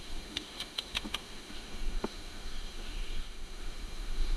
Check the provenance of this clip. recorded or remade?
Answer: remade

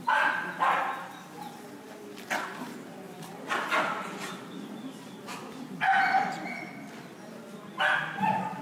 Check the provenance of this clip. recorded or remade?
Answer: recorded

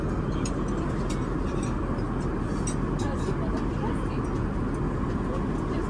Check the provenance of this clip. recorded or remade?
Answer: recorded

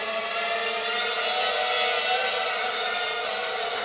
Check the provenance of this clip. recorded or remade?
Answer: recorded